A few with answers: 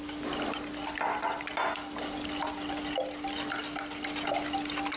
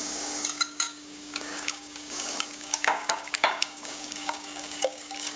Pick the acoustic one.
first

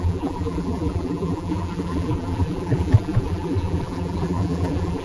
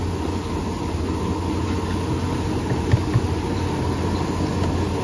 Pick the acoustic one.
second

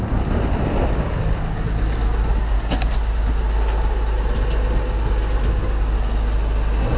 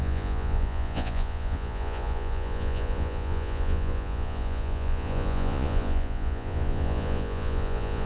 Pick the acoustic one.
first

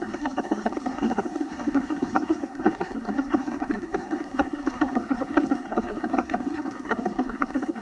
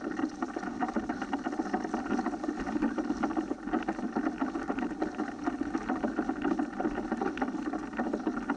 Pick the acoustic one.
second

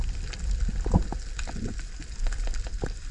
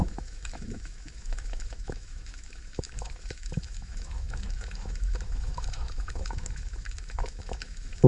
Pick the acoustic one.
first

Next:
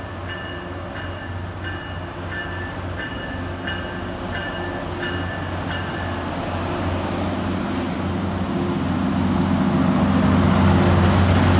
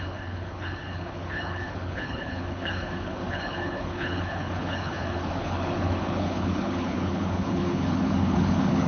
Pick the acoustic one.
first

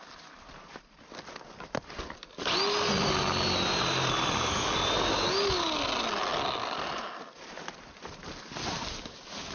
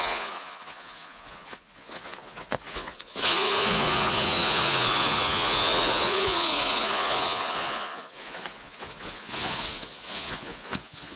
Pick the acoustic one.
first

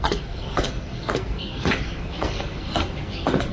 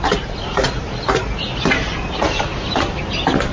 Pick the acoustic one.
second